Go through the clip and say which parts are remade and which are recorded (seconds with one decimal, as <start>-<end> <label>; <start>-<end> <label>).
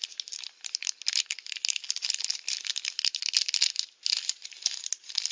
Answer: 0.0-5.3 recorded